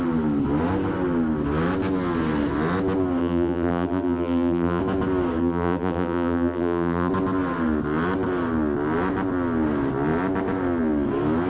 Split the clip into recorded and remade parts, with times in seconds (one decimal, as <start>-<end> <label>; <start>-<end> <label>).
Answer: 0.0-3.2 recorded; 3.2-4.8 remade; 4.8-5.4 recorded; 5.4-7.1 remade; 7.1-11.5 recorded